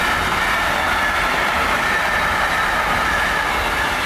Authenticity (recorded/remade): recorded